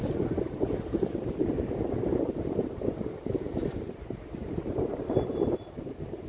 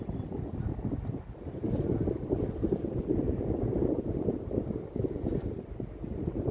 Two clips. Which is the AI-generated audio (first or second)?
first